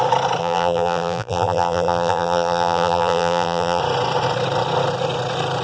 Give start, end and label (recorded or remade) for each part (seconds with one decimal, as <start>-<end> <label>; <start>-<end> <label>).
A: 0.0-0.4 recorded; 0.4-3.8 remade; 3.8-5.6 recorded